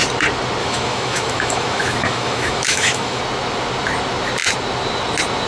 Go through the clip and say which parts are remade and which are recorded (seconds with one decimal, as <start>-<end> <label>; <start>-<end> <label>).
0.0-0.6 recorded; 0.6-3.2 remade; 3.2-5.5 recorded